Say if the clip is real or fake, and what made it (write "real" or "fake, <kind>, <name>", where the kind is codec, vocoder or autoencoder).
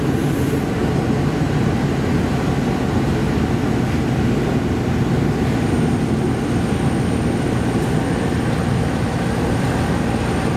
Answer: real